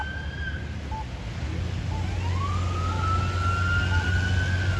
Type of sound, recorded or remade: recorded